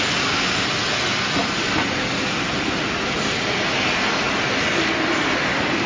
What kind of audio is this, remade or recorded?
recorded